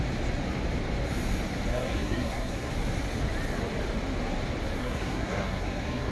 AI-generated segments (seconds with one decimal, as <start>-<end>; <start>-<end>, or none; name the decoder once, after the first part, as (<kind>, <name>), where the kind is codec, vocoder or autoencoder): 1.7-2.7 (codec, SNAC); 4.8-6.1